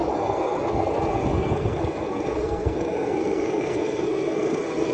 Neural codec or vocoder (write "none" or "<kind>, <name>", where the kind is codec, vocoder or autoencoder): codec, SNAC